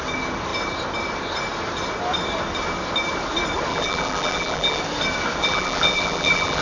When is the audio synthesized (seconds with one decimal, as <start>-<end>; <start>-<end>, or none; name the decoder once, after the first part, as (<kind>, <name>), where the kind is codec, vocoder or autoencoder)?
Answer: 3.7-4.8 (vocoder, BigVGAN v2); 5.4-6.6